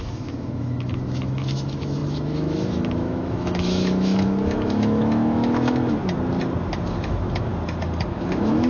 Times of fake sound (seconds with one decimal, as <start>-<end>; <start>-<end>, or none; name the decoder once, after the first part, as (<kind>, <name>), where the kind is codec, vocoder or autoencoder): 0.0-6.0 (autoencoder, DAC-VAE); 6.9-7.5; 8.1-8.7